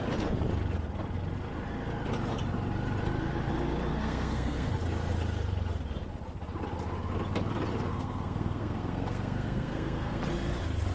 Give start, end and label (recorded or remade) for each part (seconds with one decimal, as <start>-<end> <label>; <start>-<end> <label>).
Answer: 0.0-3.9 recorded; 3.9-4.7 remade; 4.7-7.9 recorded; 7.9-10.2 remade; 10.2-10.9 recorded